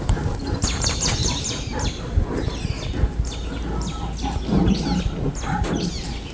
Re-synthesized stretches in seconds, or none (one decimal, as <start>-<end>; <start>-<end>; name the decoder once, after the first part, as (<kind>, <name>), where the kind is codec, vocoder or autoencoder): none